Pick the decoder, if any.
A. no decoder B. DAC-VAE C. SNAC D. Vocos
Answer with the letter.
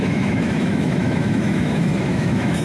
B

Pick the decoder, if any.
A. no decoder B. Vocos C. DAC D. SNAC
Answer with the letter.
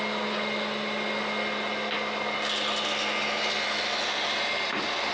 A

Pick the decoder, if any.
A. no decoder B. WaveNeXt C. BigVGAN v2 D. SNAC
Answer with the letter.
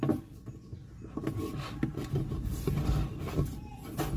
A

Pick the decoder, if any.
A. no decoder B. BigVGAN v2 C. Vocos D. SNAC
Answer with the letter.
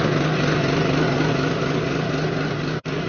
A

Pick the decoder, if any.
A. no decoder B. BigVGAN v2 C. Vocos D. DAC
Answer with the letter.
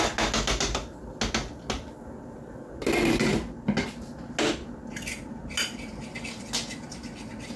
A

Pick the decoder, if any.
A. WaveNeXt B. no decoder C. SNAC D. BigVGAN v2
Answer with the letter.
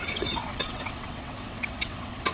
A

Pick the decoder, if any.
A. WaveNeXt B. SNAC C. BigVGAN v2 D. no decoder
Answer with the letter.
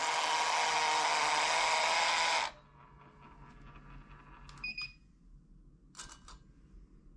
D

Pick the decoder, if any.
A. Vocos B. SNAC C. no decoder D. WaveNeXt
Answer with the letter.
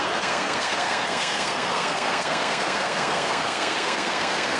B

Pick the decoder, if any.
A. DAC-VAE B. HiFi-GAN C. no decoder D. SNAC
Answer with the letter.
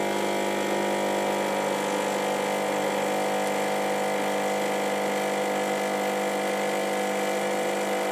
C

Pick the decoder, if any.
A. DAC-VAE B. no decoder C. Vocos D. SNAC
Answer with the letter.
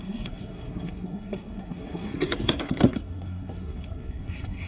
D